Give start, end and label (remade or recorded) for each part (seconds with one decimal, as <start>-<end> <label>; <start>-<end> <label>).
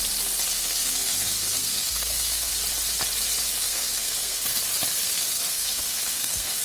0.0-0.5 recorded; 0.5-2.5 remade; 2.5-3.6 recorded; 3.6-4.6 remade; 4.6-5.0 recorded; 5.0-6.6 remade